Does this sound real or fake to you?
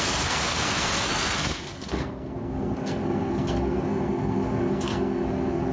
fake